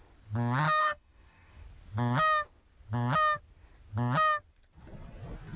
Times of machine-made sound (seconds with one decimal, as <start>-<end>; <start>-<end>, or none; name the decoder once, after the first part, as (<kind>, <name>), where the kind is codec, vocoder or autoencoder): 0.8-1.6 (codec, DAC)